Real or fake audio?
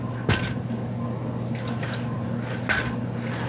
real